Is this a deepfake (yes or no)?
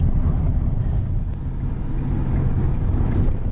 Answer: no